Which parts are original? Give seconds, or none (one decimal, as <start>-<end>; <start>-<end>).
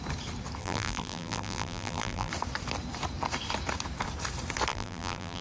0.0-0.6; 2.3-4.7